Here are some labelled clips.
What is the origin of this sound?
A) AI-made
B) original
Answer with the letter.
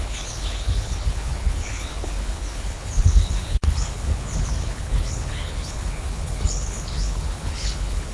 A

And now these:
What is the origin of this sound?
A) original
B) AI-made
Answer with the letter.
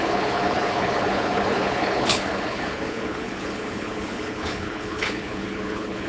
B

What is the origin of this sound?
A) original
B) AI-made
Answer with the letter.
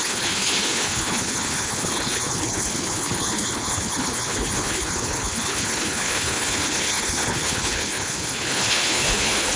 B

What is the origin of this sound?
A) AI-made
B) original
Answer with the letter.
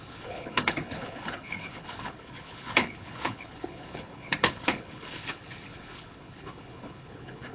A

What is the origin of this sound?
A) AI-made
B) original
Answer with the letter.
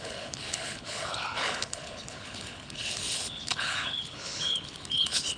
A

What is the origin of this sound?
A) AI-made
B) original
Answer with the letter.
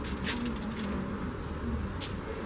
B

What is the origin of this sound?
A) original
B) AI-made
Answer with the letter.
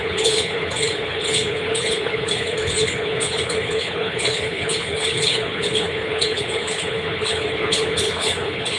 B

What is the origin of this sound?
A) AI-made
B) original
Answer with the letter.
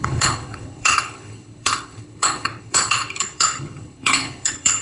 A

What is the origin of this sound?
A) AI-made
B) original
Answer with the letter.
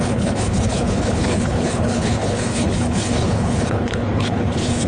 A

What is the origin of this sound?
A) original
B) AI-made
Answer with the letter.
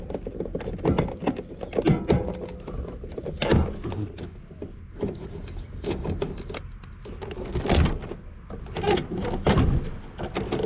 A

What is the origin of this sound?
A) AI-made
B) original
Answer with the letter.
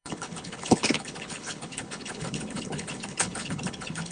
A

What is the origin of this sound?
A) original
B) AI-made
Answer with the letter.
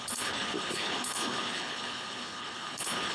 B